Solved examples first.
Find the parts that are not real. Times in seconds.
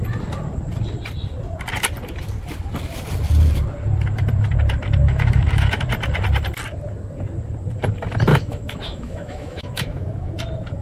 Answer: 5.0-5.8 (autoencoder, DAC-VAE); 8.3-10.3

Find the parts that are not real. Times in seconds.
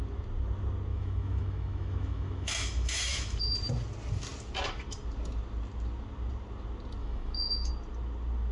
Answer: 0.9-3.4 (autoencoder, DAC-VAE); 7.0-7.7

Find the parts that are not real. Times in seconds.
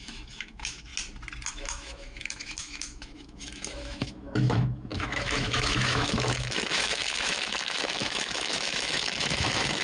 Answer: 0.0-0.9 (autoencoder, DAC-VAE); 1.5-9.8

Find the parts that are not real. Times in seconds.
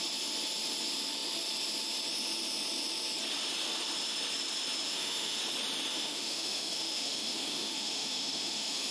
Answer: 4.8-5.4 (autoencoder, DAC-VAE); 5.9-8.9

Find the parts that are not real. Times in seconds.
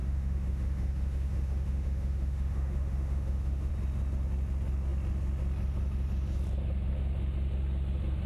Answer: 0.0-3.7 (autoencoder, DAC-VAE)